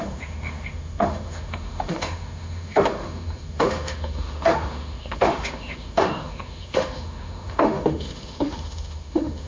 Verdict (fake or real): fake